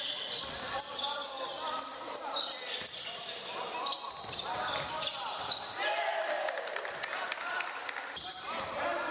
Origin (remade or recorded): remade